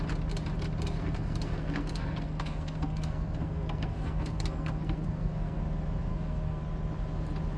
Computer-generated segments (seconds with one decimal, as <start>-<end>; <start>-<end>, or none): 1.0-5.6; 6.1-6.6

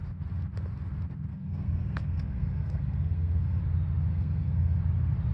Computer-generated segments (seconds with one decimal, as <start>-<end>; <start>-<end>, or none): 1.3-3.6; 4.1-4.8

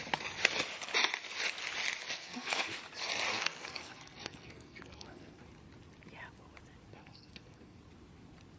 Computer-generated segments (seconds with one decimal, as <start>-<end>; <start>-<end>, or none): 2.1-2.7; 3.3-5.4; 6.9-7.8

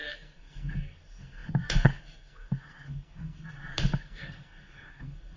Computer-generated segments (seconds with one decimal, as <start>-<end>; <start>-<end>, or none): 0.0-5.4

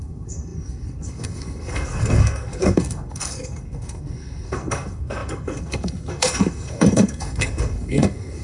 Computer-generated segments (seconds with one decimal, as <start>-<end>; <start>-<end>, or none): 0.0-8.4

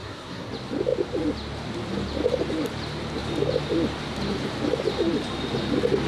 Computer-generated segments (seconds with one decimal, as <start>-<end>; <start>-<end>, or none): 0.0-0.5